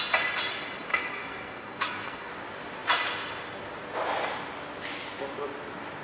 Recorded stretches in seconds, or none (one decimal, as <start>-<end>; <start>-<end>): 0.0-0.9; 2.3-6.0